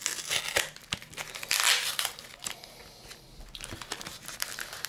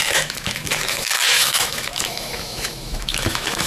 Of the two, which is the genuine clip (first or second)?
first